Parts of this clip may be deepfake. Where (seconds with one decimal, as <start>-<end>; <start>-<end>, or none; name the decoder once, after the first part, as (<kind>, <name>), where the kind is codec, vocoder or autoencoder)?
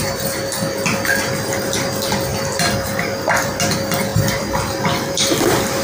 2.3-3.5 (vocoder, BigVGAN v2); 4.1-5.8